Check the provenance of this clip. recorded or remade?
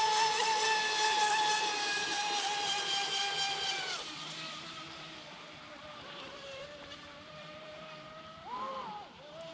remade